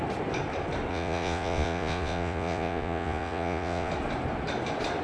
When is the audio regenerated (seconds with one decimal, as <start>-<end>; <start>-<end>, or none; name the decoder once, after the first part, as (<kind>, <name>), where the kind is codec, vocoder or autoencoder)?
0.9-3.9 (vocoder, Vocos)